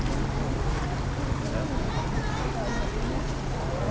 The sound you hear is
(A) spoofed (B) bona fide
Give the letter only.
B